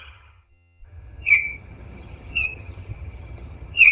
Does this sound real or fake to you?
fake